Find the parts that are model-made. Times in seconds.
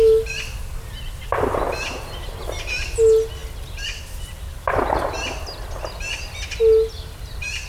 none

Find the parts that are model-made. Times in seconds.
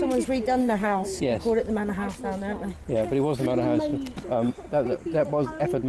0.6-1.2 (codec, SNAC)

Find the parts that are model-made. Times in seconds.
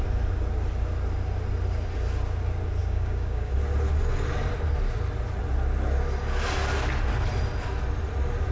2.8-3.5 (codec, DAC)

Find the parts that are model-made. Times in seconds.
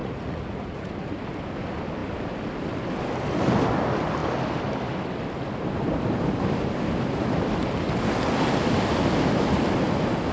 0.0-0.9 (vocoder, Vocos)